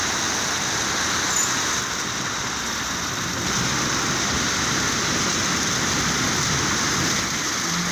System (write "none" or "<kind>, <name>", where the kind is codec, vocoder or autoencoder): none